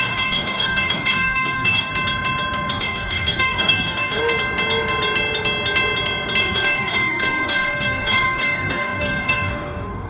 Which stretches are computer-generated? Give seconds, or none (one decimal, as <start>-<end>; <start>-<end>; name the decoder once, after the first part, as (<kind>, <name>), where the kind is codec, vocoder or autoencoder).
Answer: 0.0-1.9 (codec, DAC); 2.7-4.2; 6.4-10.1